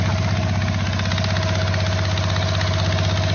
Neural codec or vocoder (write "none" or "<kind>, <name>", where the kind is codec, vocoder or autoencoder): none